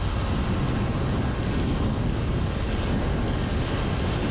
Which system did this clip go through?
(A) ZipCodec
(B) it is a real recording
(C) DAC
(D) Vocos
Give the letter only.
B